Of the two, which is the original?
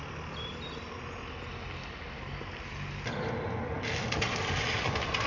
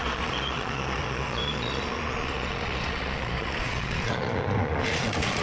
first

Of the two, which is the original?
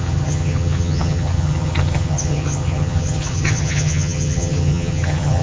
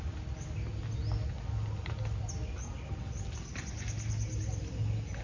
second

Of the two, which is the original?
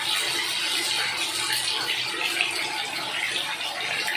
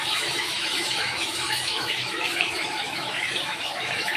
first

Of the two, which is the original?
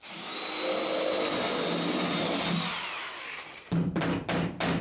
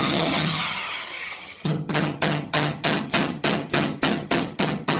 first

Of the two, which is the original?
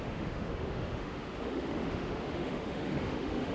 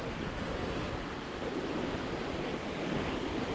second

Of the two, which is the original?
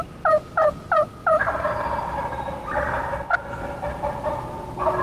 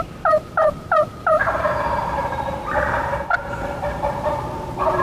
first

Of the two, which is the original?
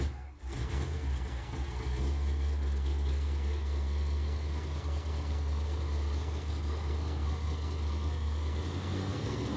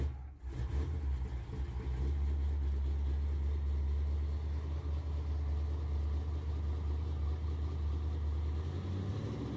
second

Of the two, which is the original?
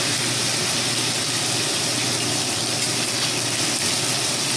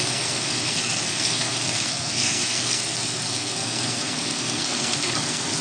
first